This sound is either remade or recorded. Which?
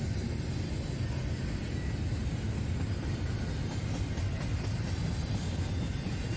recorded